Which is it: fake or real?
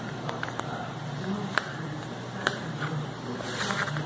fake